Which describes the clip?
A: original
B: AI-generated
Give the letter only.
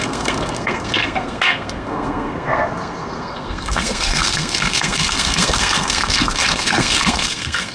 B